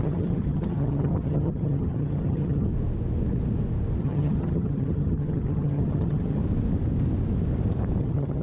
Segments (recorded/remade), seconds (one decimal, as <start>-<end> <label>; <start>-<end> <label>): 0.0-2.7 remade; 2.7-4.0 recorded; 4.0-6.4 remade; 6.4-8.0 recorded; 8.0-8.4 remade